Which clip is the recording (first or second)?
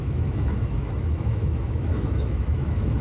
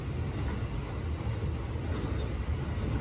second